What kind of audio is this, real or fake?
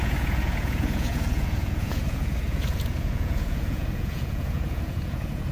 fake